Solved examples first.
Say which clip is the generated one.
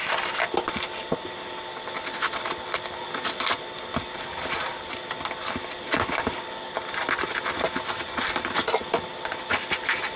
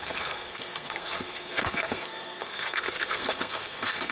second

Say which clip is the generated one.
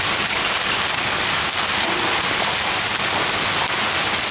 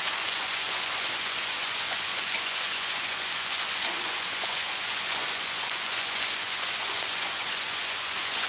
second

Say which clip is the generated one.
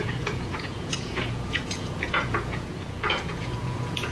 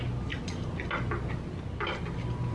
first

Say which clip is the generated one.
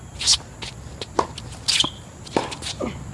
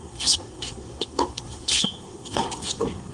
second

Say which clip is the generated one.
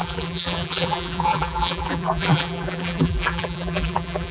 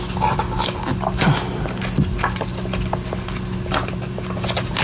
first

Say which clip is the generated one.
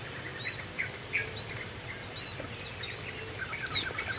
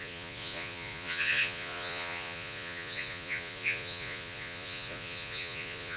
second